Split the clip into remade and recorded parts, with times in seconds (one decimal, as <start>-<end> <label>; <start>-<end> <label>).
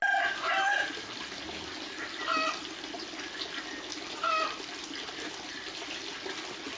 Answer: 0.0-6.8 recorded